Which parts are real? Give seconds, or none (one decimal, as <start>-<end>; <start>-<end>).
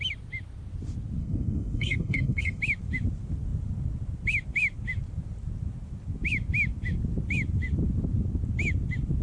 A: 0.0-1.2; 2.6-9.2